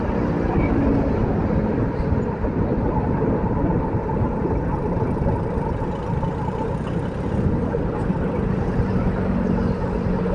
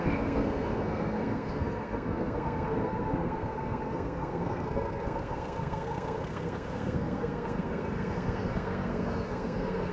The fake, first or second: second